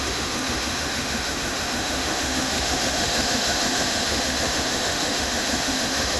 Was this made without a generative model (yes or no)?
no